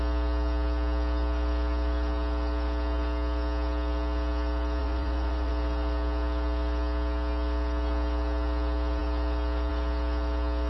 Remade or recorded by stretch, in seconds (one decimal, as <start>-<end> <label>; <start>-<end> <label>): 0.0-4.8 recorded; 4.8-5.5 remade; 5.5-10.7 recorded